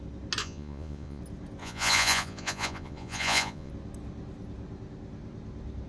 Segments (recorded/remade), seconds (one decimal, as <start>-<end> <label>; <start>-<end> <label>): 0.0-0.4 recorded; 0.4-1.2 remade; 1.2-1.6 recorded; 1.6-3.7 remade; 3.7-5.9 recorded